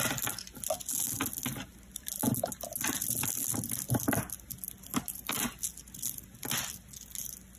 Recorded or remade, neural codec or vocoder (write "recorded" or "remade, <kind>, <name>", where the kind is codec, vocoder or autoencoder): recorded